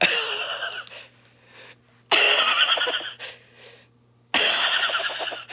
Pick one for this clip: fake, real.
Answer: real